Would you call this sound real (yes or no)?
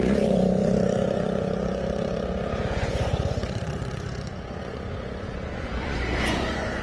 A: no